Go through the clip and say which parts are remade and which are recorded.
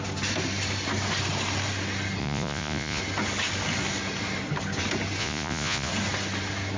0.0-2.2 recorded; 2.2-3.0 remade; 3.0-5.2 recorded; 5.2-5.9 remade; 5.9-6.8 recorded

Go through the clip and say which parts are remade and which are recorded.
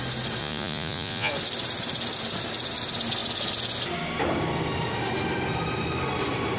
0.0-0.4 recorded; 0.4-1.3 remade; 1.3-6.6 recorded